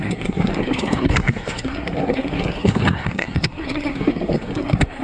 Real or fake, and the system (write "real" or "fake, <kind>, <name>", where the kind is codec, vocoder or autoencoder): fake, codec, SNAC